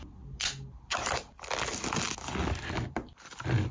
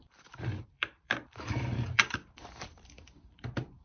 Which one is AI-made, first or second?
second